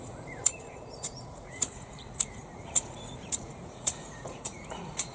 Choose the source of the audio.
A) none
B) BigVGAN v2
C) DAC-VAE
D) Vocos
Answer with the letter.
D